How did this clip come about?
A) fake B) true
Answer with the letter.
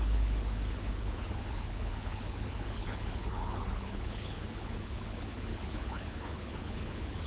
A